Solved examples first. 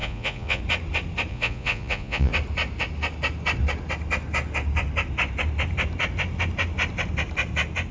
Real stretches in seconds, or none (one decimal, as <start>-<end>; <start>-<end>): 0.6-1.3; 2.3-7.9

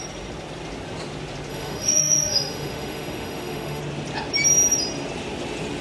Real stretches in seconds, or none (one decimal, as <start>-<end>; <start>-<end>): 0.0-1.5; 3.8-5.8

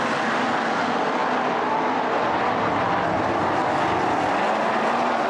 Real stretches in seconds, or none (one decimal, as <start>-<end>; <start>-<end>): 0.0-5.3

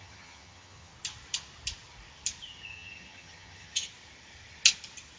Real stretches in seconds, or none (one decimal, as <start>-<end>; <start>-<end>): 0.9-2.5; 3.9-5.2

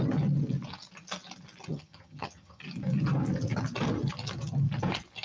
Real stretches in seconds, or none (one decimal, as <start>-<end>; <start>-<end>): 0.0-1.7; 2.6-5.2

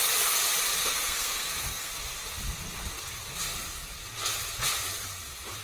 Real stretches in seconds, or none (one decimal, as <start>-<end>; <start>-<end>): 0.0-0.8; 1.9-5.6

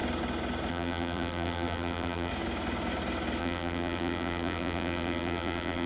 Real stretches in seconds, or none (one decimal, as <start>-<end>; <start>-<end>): 0.0-0.7; 2.3-3.4